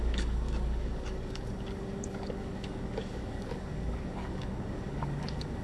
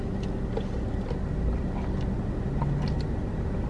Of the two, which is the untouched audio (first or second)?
second